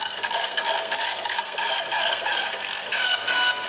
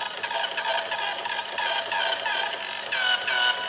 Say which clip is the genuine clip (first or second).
second